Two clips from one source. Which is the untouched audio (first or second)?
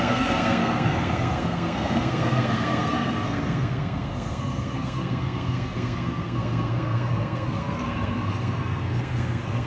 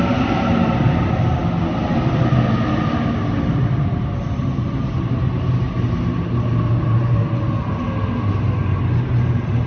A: second